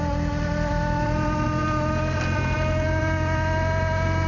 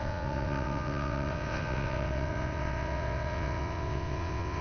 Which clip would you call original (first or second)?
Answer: first